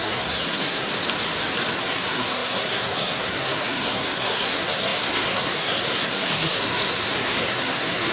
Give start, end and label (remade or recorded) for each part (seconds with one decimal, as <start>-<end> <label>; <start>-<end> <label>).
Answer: 0.0-0.9 remade; 0.9-1.8 recorded; 1.8-8.1 remade